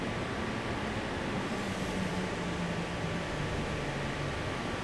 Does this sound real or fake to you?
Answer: real